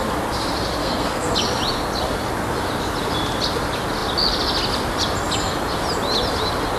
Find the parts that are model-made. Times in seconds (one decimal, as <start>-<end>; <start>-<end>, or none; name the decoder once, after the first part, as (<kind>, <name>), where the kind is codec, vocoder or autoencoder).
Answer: 0.8-1.3 (codec, SNAC)